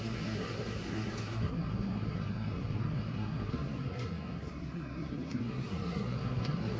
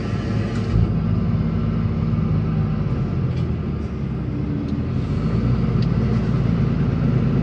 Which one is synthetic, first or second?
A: first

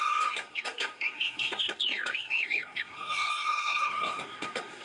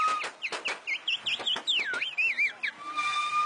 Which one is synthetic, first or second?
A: first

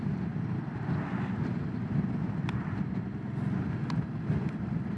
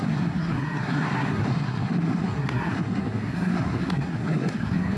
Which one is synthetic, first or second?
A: second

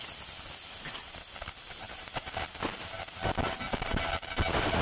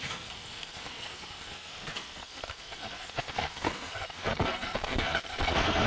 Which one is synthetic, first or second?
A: second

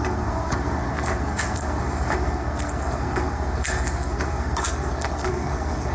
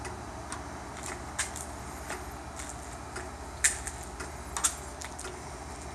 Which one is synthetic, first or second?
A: first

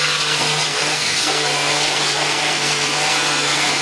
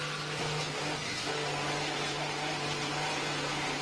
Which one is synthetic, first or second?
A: first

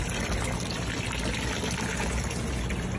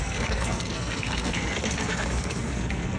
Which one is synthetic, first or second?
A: second